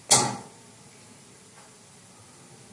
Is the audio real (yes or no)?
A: yes